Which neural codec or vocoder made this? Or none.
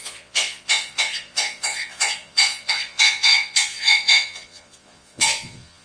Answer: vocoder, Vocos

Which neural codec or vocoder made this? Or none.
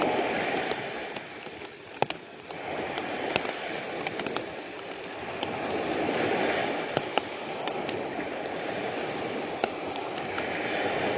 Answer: none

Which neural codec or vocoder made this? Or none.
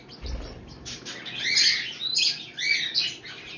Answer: none